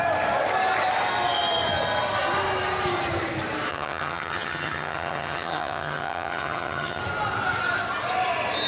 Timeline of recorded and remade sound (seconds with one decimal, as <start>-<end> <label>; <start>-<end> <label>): 0.0-3.7 recorded; 3.7-7.0 remade; 7.0-8.7 recorded